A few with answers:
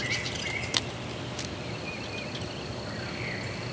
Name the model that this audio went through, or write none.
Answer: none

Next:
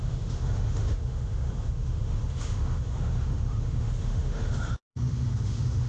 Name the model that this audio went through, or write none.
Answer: autoencoder, DAC-VAE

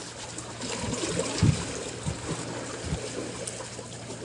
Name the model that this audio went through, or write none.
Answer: none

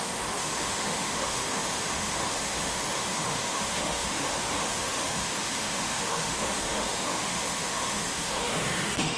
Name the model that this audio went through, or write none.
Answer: autoencoder, DAC-VAE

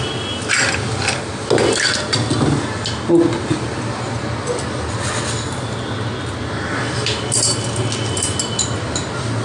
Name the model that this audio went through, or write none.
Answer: none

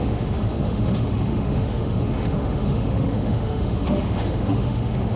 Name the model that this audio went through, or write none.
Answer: autoencoder, DAC-VAE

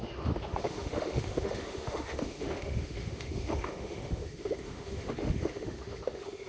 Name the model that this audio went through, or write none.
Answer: autoencoder, DAC-VAE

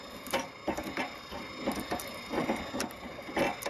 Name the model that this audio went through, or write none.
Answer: none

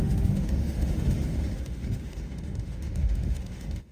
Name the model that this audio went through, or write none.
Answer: autoencoder, DAC-VAE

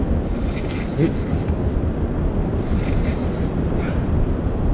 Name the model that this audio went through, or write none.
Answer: none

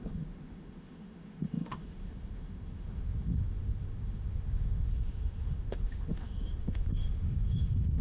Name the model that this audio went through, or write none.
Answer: autoencoder, DAC-VAE